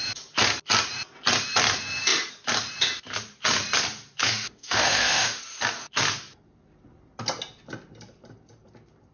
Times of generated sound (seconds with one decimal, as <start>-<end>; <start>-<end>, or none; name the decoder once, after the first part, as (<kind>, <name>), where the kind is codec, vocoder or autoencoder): 4.2-5.4 (autoencoder, DAC-VAE)